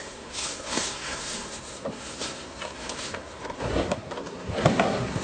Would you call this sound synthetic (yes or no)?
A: yes